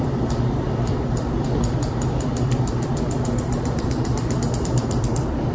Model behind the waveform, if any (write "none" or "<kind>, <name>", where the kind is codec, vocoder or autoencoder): vocoder, BigVGAN v2